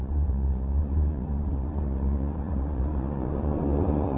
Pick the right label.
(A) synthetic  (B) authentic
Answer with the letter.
A